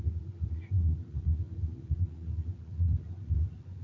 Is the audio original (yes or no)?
no